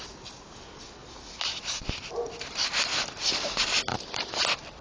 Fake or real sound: real